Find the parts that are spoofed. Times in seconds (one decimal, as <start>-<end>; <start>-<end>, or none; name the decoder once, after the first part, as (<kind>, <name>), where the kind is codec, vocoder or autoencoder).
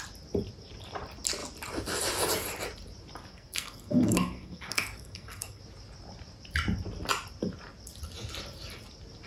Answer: 3.3-5.6 (codec, SNAC)